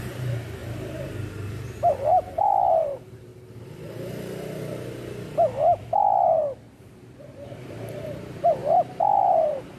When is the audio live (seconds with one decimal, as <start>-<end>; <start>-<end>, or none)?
3.3-6.9; 8.6-9.2